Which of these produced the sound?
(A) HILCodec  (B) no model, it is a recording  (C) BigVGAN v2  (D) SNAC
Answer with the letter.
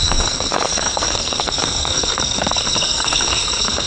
D